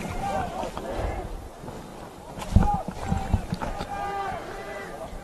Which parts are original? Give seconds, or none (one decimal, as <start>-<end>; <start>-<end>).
0.0-5.2